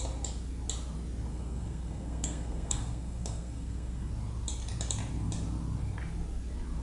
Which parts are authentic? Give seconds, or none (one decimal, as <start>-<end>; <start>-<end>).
0.0-1.3; 4.1-6.8